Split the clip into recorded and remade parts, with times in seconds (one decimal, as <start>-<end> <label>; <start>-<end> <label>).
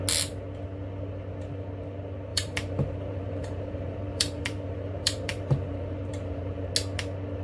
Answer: 0.0-2.3 recorded; 2.3-6.7 remade; 6.7-7.4 recorded